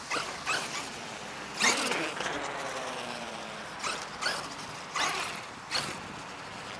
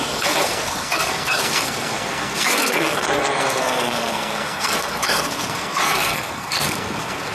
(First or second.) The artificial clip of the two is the second